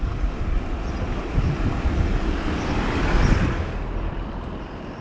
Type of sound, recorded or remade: remade